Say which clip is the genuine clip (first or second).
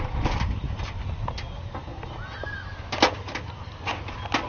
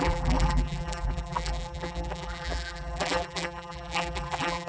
first